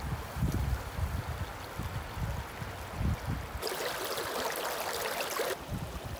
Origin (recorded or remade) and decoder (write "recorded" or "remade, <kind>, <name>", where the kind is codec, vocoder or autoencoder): recorded